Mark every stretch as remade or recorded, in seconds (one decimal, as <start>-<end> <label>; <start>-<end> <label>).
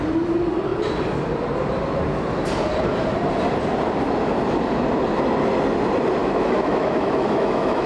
0.0-6.2 recorded; 6.2-7.9 remade